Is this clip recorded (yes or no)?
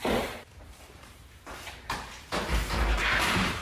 no